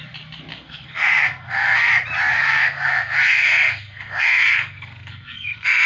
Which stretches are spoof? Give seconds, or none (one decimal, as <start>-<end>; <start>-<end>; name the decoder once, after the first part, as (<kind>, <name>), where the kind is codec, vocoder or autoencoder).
0.5-1.9 (codec, SNAC); 2.3-5.9